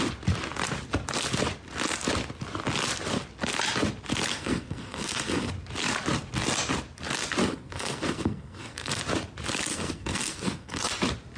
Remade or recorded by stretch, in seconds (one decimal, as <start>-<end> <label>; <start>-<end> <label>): 0.0-4.3 recorded; 4.3-5.5 remade; 5.5-7.4 recorded; 7.4-9.0 remade; 9.0-9.7 recorded; 9.7-10.9 remade; 10.9-11.4 recorded